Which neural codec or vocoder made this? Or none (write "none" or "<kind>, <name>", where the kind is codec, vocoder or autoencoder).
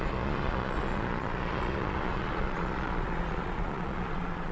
vocoder, Vocos